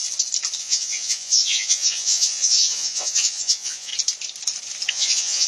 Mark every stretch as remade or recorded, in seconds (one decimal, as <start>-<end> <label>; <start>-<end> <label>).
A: 0.0-0.6 recorded; 0.6-3.9 remade; 3.9-4.9 recorded; 4.9-5.5 remade